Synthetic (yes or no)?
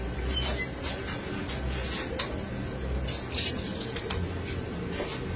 no